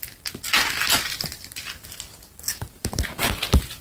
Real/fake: real